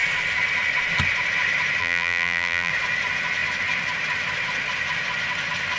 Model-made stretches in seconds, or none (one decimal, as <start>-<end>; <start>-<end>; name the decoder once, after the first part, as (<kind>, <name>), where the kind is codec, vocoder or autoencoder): 1.8-2.7 (vocoder, BigVGAN v2)